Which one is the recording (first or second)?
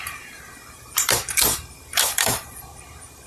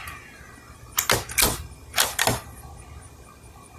second